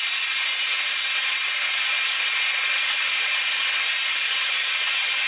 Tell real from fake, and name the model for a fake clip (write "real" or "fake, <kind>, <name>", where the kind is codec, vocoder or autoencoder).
real